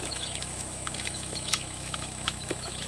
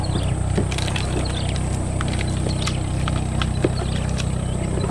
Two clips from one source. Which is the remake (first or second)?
first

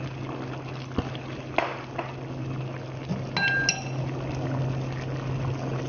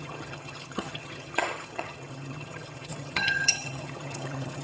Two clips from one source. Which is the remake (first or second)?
second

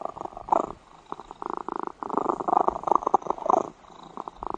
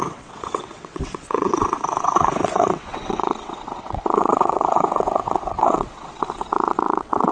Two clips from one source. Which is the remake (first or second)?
second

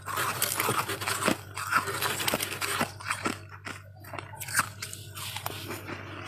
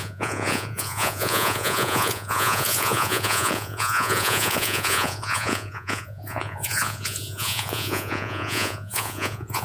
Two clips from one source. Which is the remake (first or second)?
second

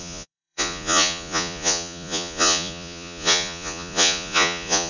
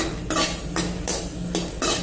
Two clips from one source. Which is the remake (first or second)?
first